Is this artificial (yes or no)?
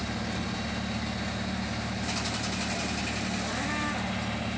no